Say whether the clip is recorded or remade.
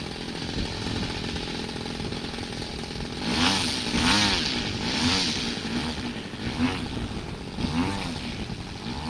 recorded